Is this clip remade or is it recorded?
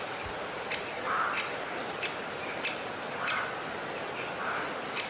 recorded